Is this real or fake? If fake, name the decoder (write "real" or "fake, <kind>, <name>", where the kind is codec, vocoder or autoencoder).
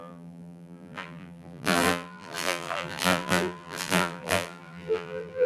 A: fake, vocoder, BigVGAN v2